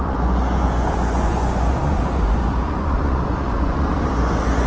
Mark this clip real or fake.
fake